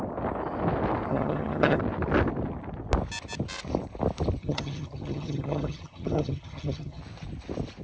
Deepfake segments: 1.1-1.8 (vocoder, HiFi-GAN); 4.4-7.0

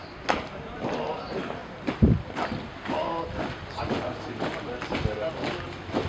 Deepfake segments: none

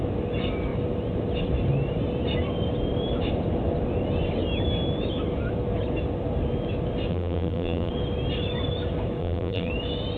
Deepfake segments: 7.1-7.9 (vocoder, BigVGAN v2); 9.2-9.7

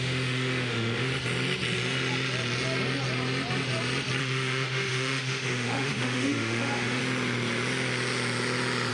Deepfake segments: 0.0-1.1 (autoencoder, DAC-VAE); 4.2-7.0

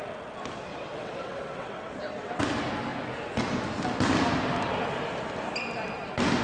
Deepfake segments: 0.7-2.4 (vocoder, WaveNeXt)